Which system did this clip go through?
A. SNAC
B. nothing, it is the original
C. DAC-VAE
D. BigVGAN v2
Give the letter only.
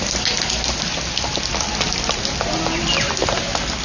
B